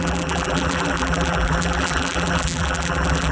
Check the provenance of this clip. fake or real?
fake